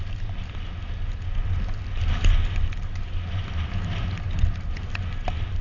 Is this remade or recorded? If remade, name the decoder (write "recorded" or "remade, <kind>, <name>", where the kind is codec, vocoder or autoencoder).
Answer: recorded